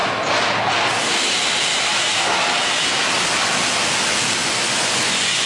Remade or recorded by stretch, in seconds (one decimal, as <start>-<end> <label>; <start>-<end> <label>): 0.0-4.4 recorded; 4.4-5.5 remade